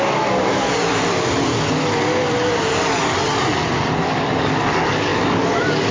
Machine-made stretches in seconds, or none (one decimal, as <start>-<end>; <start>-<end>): 0.0-0.5; 4.0-5.9